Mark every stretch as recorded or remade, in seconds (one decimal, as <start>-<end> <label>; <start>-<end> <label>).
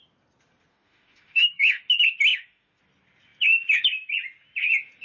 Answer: 0.0-0.7 recorded; 0.7-1.8 remade; 1.8-2.3 recorded; 2.3-2.8 remade; 2.8-5.0 recorded